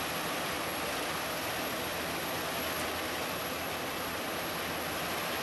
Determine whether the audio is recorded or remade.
recorded